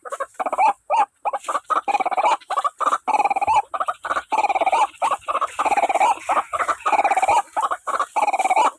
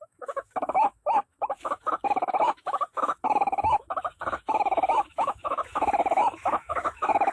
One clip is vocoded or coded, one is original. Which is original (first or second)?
first